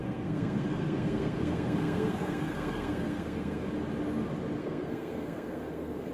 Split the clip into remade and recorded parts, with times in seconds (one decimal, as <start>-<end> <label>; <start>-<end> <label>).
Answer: 0.0-3.7 remade; 3.7-4.6 recorded; 4.6-6.1 remade